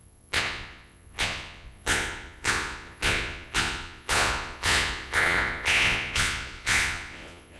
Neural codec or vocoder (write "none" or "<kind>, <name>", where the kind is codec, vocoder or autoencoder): vocoder, Vocos